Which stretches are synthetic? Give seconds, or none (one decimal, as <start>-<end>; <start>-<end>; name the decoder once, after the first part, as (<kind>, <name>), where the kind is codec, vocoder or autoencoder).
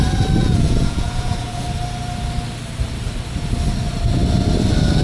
0.4-1.6 (vocoder, Vocos)